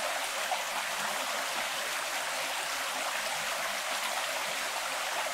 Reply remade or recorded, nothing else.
recorded